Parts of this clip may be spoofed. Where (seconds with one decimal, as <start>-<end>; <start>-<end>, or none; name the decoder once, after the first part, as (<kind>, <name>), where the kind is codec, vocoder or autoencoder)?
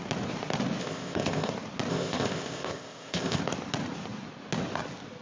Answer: 0.8-1.5 (codec, ZipCodec); 1.9-3.4